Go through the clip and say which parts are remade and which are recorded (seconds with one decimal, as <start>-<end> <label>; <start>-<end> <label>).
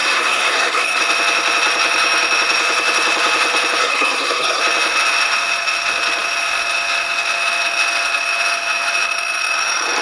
0.0-1.0 remade; 1.0-3.8 recorded; 3.8-4.6 remade; 4.6-10.0 recorded